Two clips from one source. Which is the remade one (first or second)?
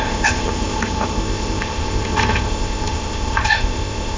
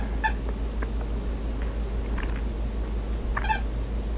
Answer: first